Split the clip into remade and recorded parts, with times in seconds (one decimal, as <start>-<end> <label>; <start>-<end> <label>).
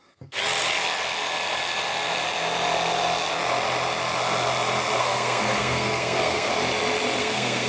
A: 0.0-0.4 remade; 0.4-5.0 recorded; 5.0-6.5 remade; 6.5-7.2 recorded; 7.2-7.7 remade